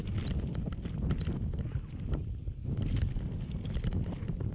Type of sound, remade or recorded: recorded